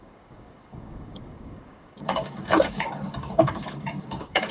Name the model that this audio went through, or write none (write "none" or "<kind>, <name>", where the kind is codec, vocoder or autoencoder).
codec, DAC